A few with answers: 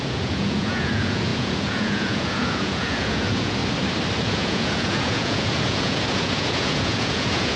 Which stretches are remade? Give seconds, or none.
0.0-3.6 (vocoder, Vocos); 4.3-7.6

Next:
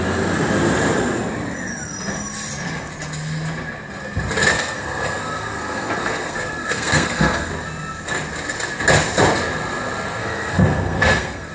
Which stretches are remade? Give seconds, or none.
4.5-7.5 (codec, SNAC); 10.2-11.5

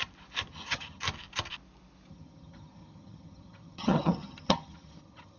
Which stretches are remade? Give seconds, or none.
0.5-1.0 (vocoder, HiFi-GAN); 2.1-5.4

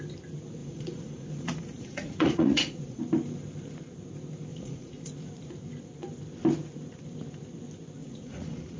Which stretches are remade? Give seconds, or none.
0.6-3.0 (vocoder, Vocos); 4.5-5.1; 8.0-8.8

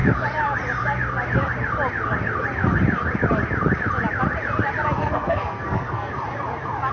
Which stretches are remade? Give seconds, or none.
5.0-6.1 (codec, SNAC)

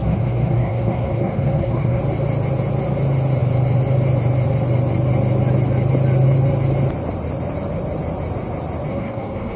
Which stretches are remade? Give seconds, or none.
0.0-2.0 (codec, SNAC); 8.9-9.6

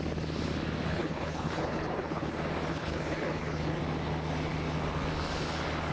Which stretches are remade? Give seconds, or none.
0.9-2.3 (codec, HILCodec); 2.7-3.8

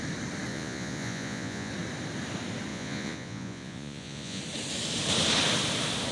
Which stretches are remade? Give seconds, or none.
0.5-1.7 (vocoder, Vocos); 2.7-4.4